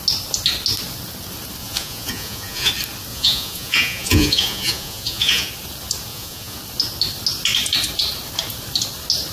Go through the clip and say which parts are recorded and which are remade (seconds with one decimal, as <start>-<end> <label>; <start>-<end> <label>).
0.0-1.6 recorded; 1.6-2.7 remade; 2.7-3.1 recorded; 3.1-5.5 remade; 5.5-6.1 recorded; 6.1-6.6 remade; 6.6-9.3 recorded